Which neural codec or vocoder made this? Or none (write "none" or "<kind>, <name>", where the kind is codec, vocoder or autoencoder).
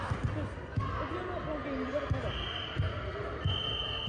none